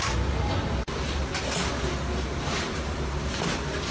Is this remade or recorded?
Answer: recorded